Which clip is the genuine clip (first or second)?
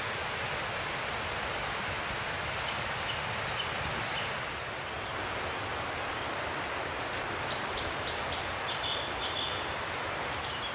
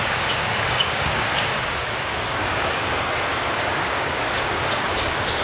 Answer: first